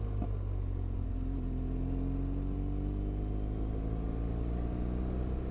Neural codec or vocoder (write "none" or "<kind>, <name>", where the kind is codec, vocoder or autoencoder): none